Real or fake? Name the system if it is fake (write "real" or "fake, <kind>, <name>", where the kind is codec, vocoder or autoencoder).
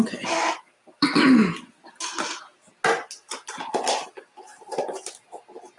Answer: real